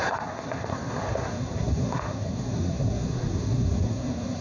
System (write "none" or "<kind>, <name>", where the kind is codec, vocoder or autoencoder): codec, SNAC